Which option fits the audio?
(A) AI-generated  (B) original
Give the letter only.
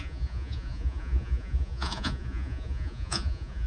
A